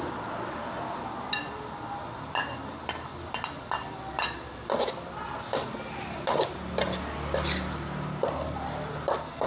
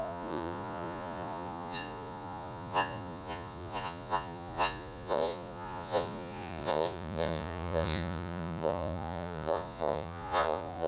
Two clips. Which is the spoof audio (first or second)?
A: second